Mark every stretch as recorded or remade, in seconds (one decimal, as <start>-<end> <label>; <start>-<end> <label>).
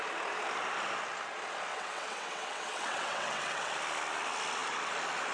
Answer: 0.0-1.7 recorded; 1.7-3.7 remade; 3.7-5.3 recorded